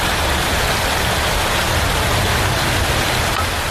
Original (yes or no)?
yes